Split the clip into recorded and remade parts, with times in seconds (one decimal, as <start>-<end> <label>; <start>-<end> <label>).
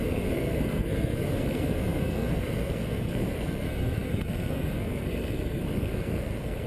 0.0-6.7 remade